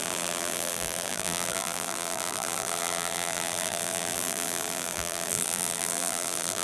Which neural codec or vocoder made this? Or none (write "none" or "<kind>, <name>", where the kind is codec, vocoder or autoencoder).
vocoder, BigVGAN v2